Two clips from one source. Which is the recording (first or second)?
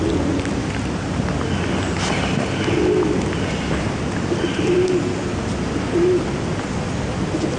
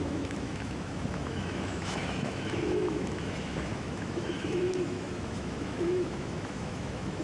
first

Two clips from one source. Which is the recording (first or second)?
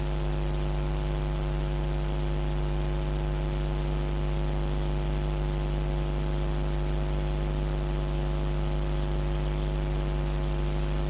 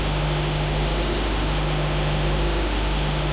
first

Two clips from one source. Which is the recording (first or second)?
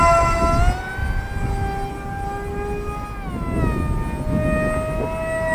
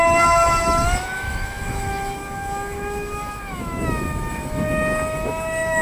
first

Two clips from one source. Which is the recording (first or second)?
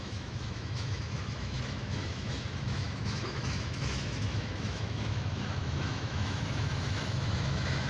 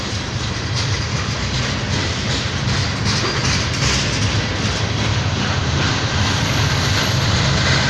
second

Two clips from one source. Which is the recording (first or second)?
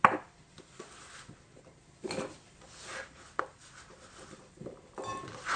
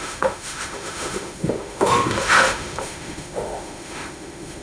first